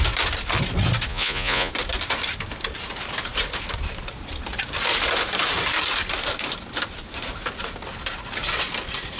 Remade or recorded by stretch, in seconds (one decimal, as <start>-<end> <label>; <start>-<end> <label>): 0.0-1.1 recorded; 1.1-1.7 remade; 1.7-9.2 recorded